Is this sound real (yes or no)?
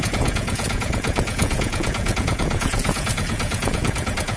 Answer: no